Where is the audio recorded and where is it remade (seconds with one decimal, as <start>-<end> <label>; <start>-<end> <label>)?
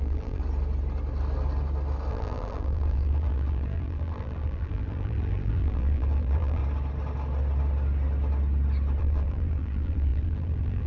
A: 0.0-0.4 remade; 0.4-2.1 recorded; 2.1-6.6 remade; 6.6-9.0 recorded; 9.0-10.9 remade